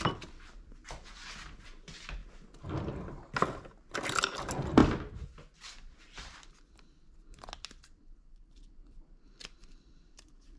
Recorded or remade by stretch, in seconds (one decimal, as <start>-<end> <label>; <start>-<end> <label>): 0.0-10.6 recorded